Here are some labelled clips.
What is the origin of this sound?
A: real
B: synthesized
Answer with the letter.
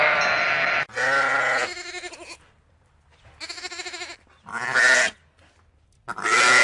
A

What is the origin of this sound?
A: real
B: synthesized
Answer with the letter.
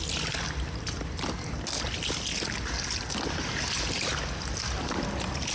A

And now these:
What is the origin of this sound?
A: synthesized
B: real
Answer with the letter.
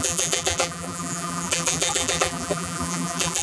A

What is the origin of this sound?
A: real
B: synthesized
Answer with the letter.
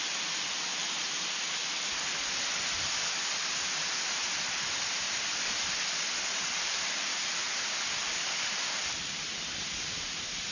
A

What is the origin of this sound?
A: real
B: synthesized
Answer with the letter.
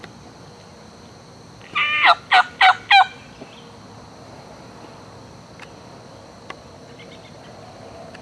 A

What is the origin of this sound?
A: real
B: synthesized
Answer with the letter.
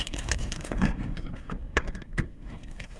B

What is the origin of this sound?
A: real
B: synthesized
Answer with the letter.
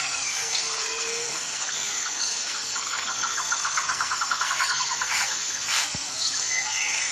B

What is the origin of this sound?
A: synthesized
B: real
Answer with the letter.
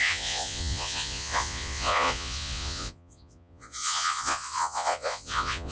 A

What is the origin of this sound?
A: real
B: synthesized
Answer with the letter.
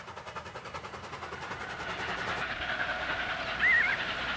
B